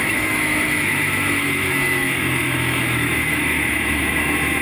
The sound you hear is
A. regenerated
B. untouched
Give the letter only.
A